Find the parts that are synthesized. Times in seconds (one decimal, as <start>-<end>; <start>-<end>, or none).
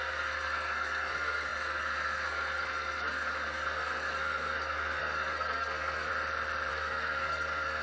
0.0-6.1; 6.7-7.8